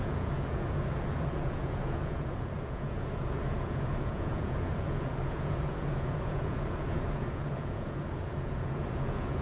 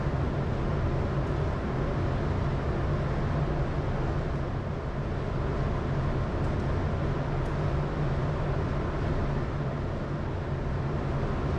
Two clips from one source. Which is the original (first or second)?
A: second